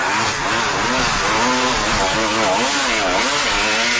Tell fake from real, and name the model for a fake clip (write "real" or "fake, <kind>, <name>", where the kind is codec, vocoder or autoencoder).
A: real